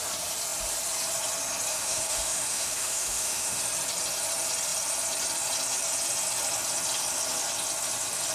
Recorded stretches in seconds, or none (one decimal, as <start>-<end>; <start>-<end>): 0.0-1.7; 3.6-8.3